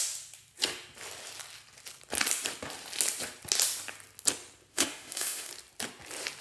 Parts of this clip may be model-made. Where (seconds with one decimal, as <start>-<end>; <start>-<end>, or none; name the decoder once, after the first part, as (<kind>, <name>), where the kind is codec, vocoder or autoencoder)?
4.7-5.5 (autoencoder, DAC-VAE)